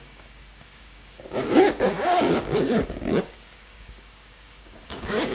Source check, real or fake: fake